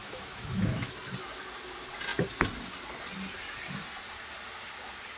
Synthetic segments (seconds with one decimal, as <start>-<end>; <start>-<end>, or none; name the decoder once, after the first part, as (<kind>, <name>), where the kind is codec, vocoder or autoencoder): 0.0-0.9 (autoencoder, DAC-VAE)